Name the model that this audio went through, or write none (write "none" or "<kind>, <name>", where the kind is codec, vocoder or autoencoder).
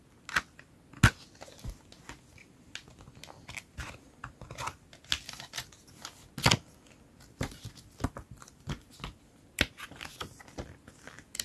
none